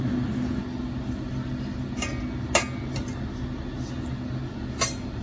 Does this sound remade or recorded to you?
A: recorded